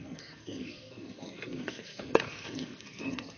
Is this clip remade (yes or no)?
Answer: yes